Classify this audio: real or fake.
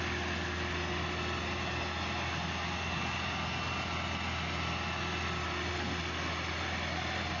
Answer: real